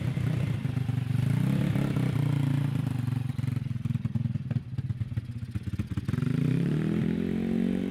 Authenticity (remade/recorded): recorded